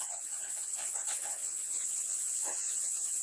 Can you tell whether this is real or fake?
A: fake